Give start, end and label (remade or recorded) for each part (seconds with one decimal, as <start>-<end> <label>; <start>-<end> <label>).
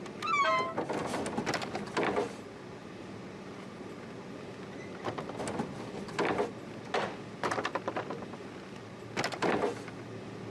0.0-10.5 recorded